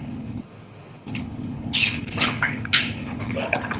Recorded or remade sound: remade